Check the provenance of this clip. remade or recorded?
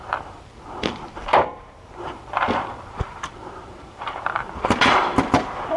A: remade